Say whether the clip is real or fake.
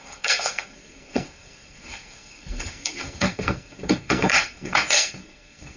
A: fake